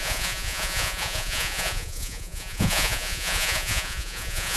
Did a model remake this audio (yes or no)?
yes